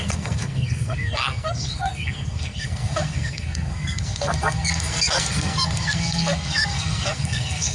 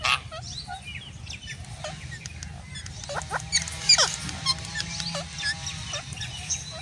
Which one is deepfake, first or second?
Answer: first